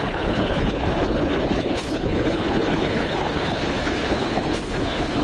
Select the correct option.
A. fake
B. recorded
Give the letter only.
A